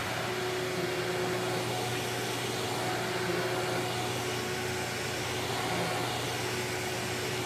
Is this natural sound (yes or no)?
yes